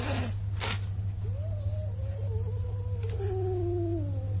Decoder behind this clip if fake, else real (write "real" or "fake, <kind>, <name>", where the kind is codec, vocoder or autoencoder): real